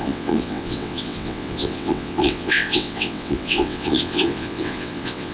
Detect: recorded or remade remade